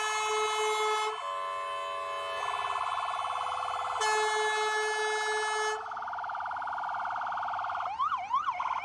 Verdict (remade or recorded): recorded